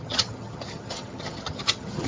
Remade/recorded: remade